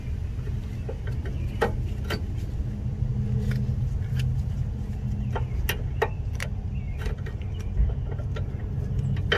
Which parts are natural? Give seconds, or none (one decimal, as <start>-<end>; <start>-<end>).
0.0-9.4